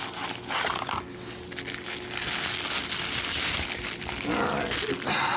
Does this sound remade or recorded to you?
recorded